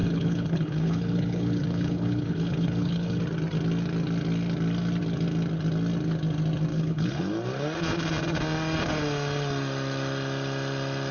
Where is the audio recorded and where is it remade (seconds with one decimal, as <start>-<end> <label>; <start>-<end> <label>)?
0.0-3.2 remade; 3.2-6.7 recorded; 6.7-7.2 remade; 7.2-11.1 recorded